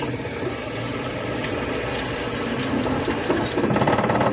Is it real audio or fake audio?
fake